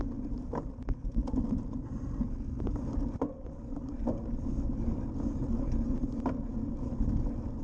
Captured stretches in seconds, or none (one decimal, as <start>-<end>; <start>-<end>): 0.0-7.6